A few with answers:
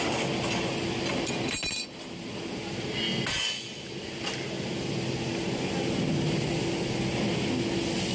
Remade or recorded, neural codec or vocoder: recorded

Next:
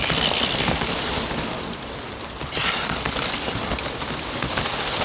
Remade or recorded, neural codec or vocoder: remade, vocoder, BigVGAN v2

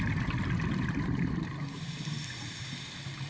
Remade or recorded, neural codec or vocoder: recorded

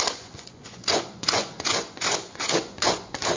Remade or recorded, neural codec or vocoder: remade, vocoder, Vocos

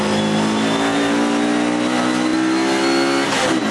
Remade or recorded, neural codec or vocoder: recorded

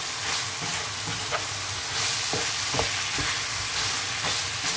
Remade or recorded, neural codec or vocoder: recorded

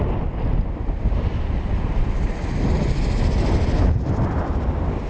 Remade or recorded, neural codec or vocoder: recorded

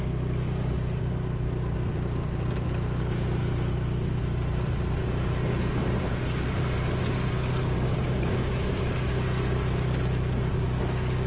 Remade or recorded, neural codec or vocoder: recorded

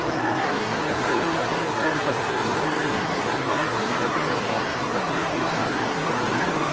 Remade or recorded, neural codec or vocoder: remade, codec, SNAC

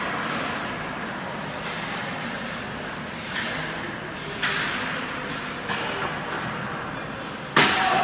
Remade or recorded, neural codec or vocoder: recorded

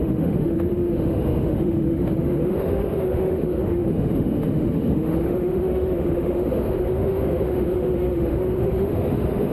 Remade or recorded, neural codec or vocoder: remade, autoencoder, DAC-VAE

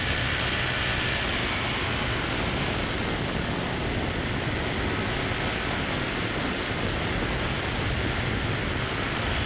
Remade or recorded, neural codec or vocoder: recorded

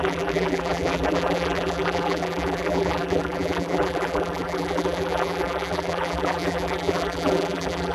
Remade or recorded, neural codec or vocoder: remade, vocoder, BigVGAN v2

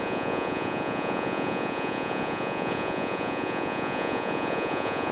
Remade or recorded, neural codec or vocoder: remade, vocoder, Vocos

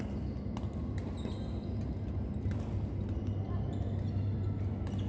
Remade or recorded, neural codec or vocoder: recorded